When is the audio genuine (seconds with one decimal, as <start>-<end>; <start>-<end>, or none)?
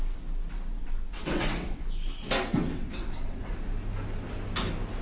0.0-0.8; 1.8-2.5; 3.5-5.0